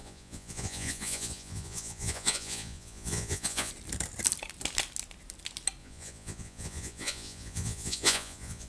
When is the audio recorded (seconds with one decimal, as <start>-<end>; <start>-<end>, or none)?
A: 3.7-5.8